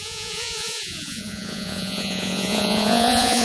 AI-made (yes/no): yes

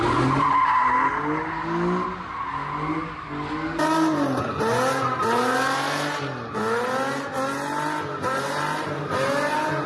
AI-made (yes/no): no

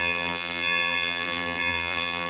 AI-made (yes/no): yes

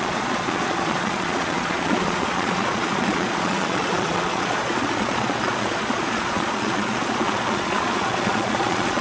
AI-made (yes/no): yes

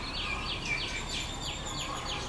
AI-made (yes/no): no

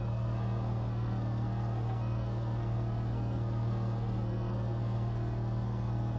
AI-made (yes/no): yes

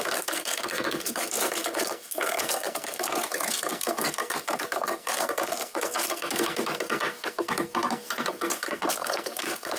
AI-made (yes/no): yes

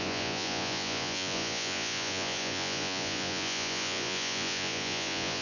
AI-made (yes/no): yes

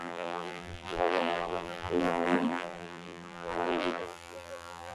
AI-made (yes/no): yes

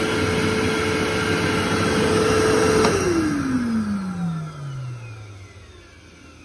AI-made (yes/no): no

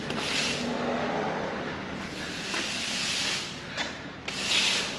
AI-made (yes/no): no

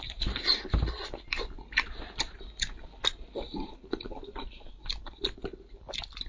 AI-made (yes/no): no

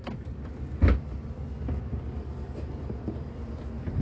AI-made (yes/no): no